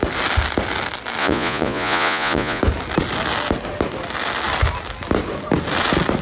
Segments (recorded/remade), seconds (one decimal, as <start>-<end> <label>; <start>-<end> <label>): 0.0-1.2 recorded; 1.2-2.6 remade; 2.6-6.2 recorded